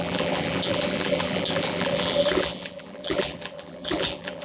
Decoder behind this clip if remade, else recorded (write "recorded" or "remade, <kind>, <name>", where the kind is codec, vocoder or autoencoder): remade, vocoder, BigVGAN v2